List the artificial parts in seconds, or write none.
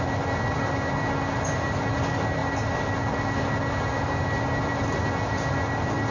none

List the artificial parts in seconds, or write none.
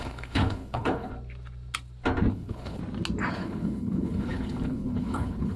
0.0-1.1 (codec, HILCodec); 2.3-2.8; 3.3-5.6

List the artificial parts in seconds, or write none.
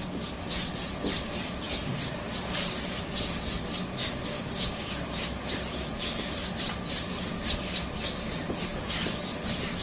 0.0-9.8 (vocoder, BigVGAN v2)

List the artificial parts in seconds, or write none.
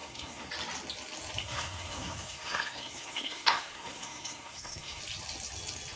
0.0-0.5 (codec, SNAC); 1.4-5.0